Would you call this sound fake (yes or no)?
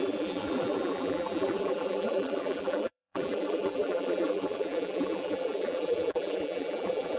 yes